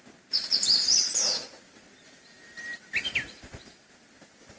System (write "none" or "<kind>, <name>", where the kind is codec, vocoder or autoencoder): vocoder, BigVGAN v2